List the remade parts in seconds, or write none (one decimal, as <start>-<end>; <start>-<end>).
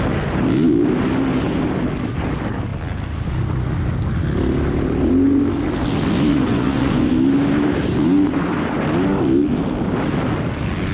6.3-7.1